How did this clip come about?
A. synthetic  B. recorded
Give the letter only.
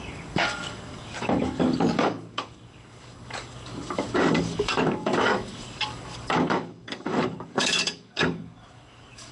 A